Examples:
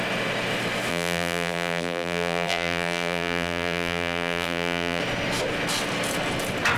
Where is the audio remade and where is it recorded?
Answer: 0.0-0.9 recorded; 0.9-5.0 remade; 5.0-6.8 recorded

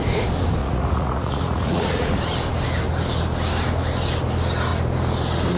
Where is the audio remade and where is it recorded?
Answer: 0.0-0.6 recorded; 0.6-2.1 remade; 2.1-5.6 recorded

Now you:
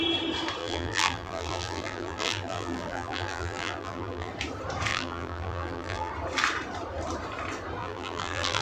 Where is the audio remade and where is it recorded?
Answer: 0.0-0.6 recorded; 0.6-4.3 remade; 4.3-4.9 recorded; 4.9-6.1 remade; 6.1-7.8 recorded; 7.8-8.6 remade